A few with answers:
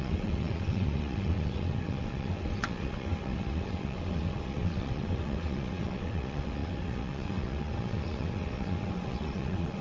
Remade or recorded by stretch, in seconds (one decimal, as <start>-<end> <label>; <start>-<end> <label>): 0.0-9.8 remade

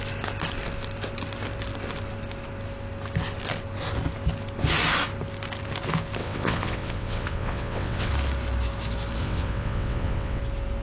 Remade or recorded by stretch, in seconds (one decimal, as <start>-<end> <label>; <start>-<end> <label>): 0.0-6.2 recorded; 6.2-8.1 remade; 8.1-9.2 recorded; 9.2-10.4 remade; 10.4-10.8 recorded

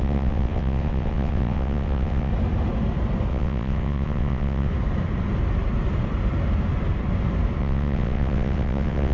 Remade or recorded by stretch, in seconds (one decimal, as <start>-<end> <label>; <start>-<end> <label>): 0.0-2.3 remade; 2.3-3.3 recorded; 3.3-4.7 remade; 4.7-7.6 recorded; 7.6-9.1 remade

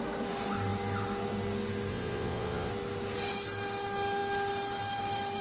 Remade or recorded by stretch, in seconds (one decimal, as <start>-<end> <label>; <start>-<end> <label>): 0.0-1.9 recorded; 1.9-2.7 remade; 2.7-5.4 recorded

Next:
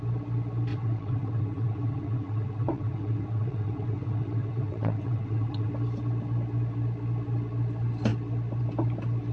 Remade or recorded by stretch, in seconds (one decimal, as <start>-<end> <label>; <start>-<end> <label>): 0.0-0.7 recorded; 0.7-5.7 remade; 5.7-9.3 recorded

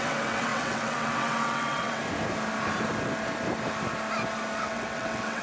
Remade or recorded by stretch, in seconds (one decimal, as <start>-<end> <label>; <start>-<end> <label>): 0.0-2.0 remade; 2.0-4.6 recorded; 4.6-5.4 remade

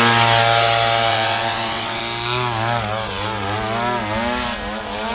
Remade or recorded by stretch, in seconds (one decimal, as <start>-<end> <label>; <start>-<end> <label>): 0.0-1.1 recorded; 1.1-2.0 remade; 2.0-5.1 recorded